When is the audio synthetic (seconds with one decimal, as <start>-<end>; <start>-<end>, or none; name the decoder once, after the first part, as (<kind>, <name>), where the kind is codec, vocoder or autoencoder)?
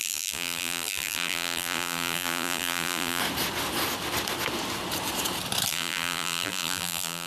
0.0-3.2 (vocoder, BigVGAN v2); 5.7-7.3